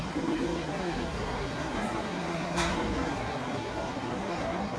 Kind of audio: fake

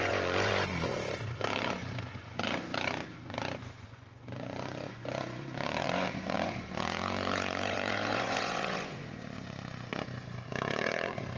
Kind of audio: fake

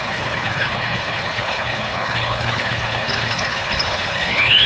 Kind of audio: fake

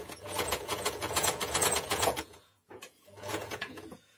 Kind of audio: fake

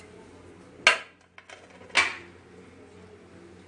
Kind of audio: real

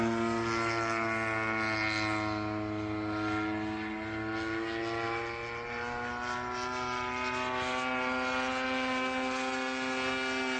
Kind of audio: real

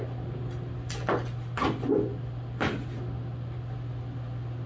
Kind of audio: real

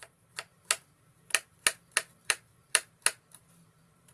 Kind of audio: fake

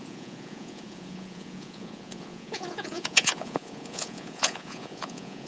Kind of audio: fake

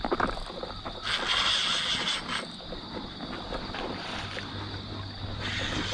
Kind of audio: real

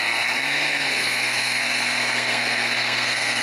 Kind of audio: fake